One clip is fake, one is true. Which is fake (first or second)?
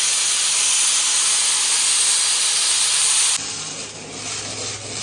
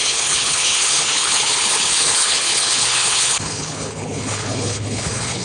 second